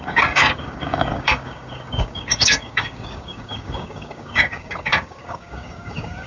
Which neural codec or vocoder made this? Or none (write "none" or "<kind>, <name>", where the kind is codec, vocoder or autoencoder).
codec, DAC